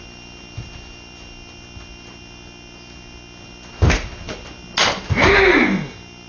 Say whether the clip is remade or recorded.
recorded